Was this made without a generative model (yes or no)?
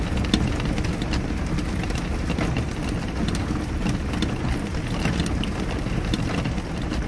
yes